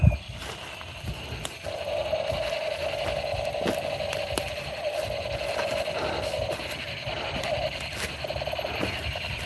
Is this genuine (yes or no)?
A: yes